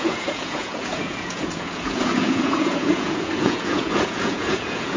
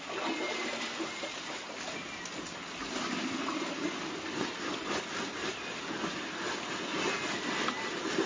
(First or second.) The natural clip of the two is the second